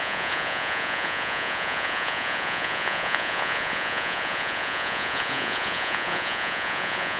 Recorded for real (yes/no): no